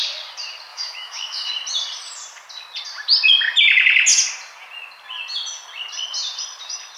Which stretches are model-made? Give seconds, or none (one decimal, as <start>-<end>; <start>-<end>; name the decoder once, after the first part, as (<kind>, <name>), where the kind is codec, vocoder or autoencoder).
0.7-1.5 (autoencoder, DAC-VAE)

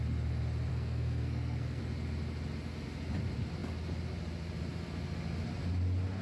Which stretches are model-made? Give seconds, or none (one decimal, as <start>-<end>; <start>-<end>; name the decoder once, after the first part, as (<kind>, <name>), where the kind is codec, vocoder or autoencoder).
0.7-1.8 (codec, SNAC)